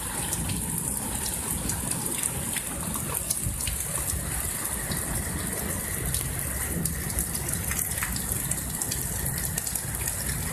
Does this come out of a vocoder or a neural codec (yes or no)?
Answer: no